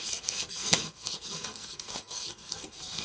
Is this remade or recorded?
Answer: remade